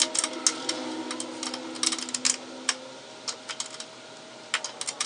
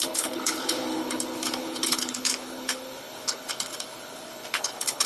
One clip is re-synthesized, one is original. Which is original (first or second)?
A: first